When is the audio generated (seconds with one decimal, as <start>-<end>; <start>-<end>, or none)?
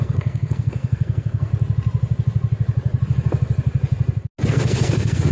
0.0-1.5; 4.5-5.3